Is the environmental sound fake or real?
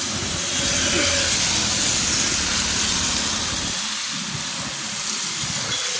real